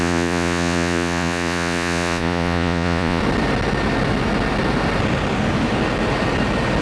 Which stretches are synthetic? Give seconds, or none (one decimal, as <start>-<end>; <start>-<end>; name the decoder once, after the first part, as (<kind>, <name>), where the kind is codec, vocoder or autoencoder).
0.0-3.2 (vocoder, Vocos)